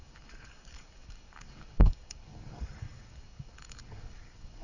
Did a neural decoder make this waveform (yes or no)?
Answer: yes